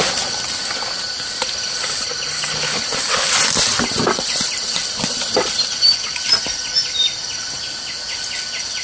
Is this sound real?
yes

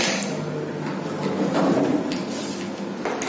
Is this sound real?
yes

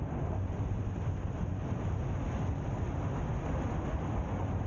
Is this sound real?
yes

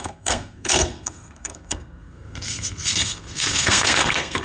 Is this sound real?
no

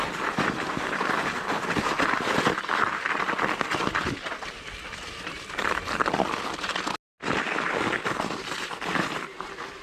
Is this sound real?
yes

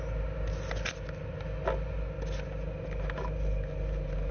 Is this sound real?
yes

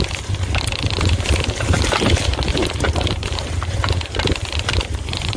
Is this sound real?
yes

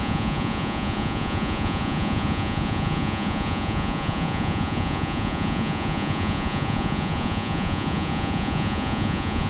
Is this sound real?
no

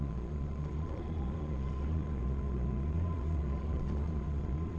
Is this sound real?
no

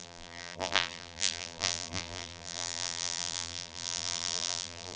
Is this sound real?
no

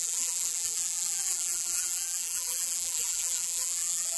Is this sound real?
no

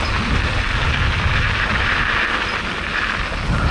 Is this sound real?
yes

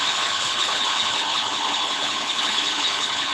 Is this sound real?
no